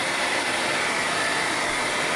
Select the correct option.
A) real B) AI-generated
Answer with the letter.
A